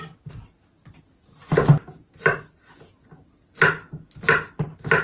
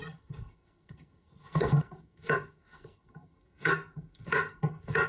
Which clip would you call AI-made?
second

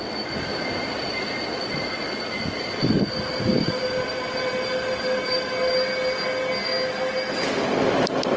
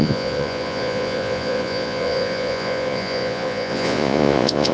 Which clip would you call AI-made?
second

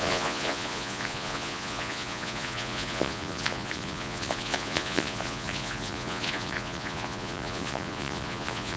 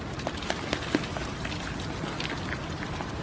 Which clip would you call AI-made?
first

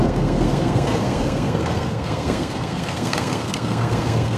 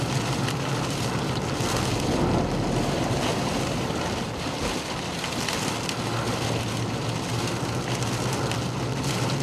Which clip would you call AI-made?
first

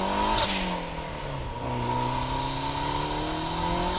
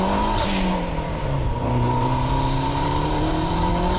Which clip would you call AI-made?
second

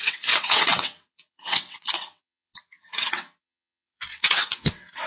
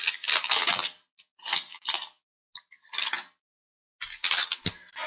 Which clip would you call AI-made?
first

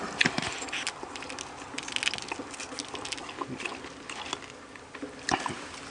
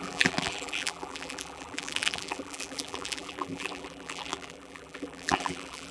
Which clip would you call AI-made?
second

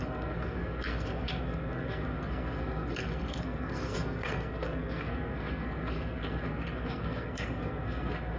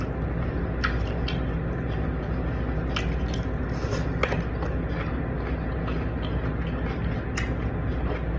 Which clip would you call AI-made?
first